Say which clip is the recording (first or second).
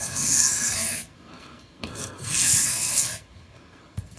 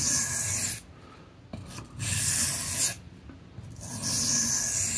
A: second